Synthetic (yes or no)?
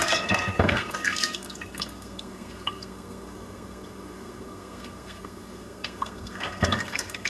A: yes